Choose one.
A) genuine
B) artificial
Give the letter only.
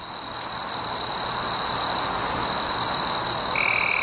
A